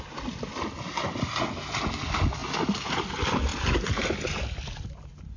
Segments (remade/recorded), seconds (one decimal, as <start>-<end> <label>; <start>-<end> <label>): 0.0-5.4 recorded